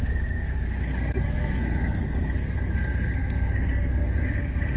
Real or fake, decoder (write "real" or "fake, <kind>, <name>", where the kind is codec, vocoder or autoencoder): fake, codec, SNAC